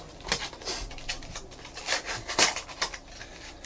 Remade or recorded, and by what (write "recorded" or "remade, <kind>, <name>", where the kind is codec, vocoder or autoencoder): recorded